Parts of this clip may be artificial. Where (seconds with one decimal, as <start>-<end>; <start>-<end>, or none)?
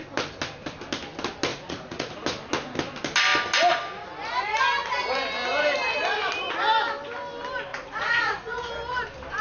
1.5-2.1; 7.7-8.7